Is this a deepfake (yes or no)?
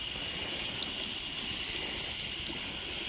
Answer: no